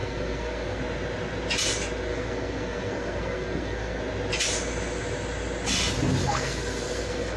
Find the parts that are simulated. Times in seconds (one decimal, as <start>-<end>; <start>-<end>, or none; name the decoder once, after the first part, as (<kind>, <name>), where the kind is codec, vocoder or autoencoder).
0.0-0.8 (codec, SNAC); 2.1-4.0; 6.2-7.4